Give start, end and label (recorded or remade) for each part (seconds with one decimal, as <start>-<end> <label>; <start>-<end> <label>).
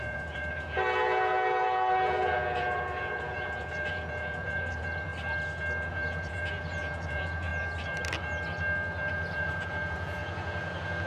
0.0-5.1 remade; 5.1-5.9 recorded; 5.9-7.5 remade; 7.5-9.1 recorded; 9.1-11.1 remade